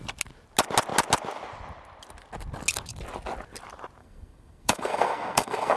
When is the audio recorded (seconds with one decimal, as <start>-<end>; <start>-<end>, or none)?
0.0-4.0